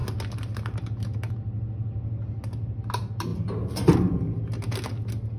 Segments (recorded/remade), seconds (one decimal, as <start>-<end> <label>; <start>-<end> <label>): 0.0-3.3 recorded; 3.3-4.4 remade; 4.4-5.4 recorded